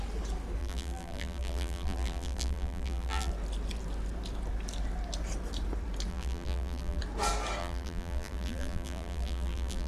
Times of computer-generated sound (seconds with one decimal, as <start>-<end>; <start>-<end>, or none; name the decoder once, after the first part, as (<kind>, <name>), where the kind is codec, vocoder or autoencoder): 0.6-3.3 (vocoder, BigVGAN v2); 6.1-7.0; 7.6-9.9